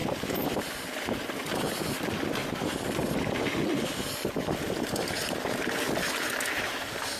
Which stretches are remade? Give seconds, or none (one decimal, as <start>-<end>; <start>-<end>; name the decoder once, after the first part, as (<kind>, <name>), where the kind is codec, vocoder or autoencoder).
0.0-0.6 (vocoder, BigVGAN v2)